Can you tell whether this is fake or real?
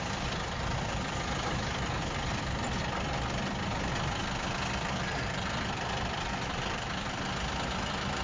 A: real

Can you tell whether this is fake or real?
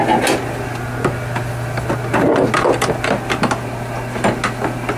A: real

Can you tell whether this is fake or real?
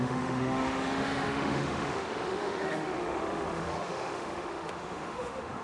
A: fake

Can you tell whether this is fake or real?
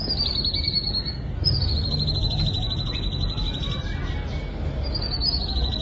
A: real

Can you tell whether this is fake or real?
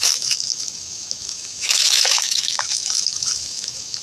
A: fake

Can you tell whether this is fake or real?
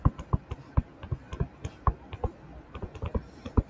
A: real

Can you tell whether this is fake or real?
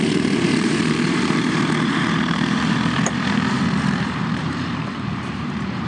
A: fake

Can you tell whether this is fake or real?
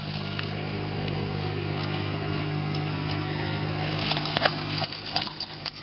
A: fake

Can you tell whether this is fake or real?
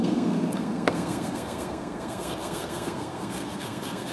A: fake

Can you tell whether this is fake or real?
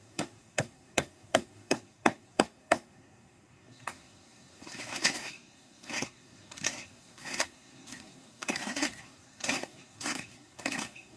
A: fake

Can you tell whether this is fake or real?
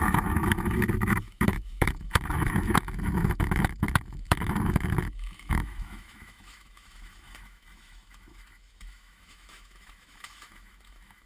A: fake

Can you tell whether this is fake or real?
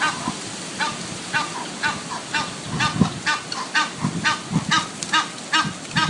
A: real